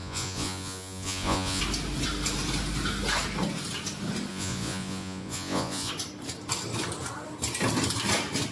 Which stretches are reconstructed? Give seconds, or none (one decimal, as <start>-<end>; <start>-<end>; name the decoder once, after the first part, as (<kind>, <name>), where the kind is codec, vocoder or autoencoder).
0.0-1.6 (vocoder, Vocos); 4.3-5.9